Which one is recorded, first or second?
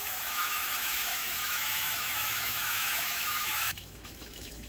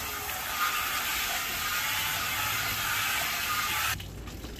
second